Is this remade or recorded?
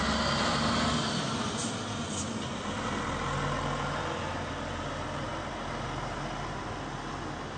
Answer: recorded